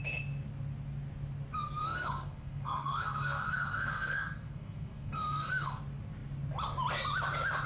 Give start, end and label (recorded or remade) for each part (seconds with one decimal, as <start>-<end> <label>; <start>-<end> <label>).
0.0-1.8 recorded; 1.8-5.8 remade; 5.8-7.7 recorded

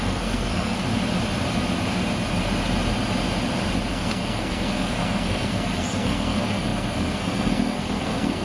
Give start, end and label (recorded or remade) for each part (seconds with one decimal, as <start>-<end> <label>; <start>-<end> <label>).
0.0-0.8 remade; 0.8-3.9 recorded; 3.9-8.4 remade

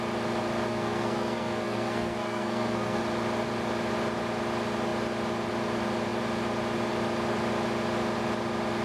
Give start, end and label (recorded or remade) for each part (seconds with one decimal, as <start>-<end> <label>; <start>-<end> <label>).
0.0-0.7 recorded; 0.7-3.0 remade; 3.0-8.8 recorded